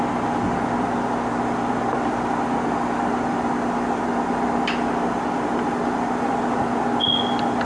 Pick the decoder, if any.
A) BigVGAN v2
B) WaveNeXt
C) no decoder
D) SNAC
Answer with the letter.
C